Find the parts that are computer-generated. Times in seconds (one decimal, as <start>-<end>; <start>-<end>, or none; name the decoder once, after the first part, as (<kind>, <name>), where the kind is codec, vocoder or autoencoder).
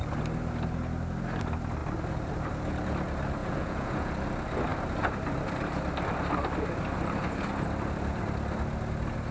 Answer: 3.4-4.1 (vocoder, Vocos)